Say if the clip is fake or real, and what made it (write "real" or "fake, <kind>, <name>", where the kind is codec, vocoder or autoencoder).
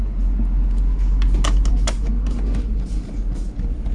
real